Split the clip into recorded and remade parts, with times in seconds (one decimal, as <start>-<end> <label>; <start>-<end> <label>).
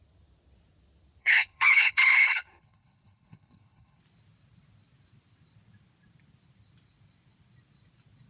0.0-1.2 recorded; 1.2-4.0 remade; 4.0-8.3 recorded